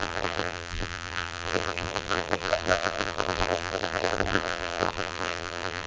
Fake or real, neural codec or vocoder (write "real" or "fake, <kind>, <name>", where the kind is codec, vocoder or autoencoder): fake, vocoder, BigVGAN v2